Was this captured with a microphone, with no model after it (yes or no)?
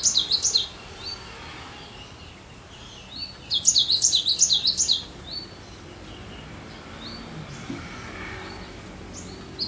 yes